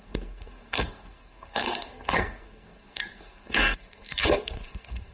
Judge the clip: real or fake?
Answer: fake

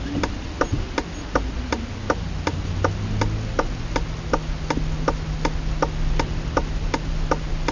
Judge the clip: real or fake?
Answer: real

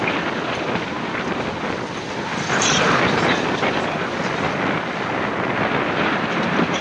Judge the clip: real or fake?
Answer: real